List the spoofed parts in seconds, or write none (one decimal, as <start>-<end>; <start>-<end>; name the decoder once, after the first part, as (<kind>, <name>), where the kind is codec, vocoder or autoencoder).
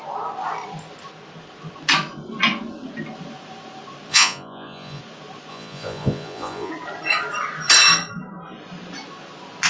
4.1-5.0 (vocoder, Vocos); 5.5-6.7